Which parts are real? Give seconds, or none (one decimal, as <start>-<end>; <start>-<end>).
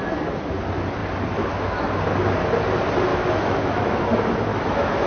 0.0-3.1; 4.0-4.5